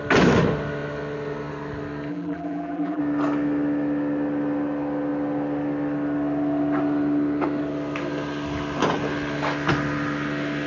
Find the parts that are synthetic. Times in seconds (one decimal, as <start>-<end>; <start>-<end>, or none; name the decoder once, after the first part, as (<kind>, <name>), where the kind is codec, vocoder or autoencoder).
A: 2.1-3.0 (vocoder, BigVGAN v2)